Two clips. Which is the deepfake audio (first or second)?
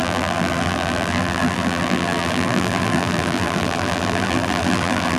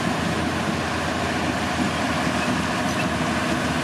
first